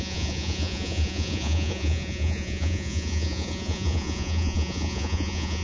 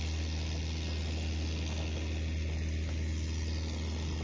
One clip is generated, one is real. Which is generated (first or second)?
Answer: first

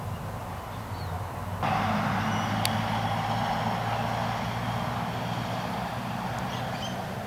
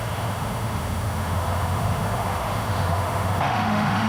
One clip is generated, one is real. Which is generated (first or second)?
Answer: second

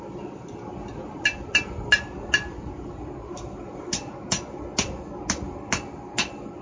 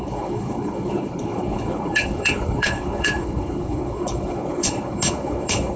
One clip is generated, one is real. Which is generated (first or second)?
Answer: second